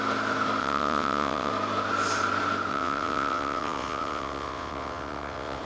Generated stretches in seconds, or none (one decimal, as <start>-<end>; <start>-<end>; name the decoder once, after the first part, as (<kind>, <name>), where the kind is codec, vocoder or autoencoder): 0.6-1.5 (vocoder, WaveNeXt); 2.7-5.6